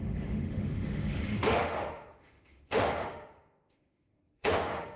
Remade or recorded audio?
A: remade